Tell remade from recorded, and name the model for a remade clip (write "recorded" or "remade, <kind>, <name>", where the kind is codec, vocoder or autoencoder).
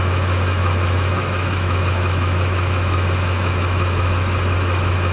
remade, autoencoder, DAC-VAE